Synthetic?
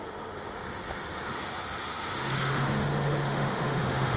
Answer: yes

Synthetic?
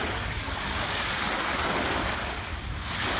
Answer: yes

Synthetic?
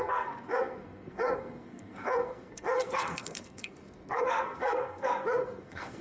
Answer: yes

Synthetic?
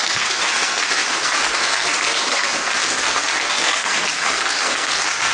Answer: yes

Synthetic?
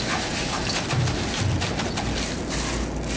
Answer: no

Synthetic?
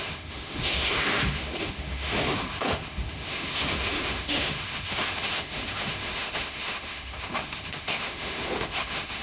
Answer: yes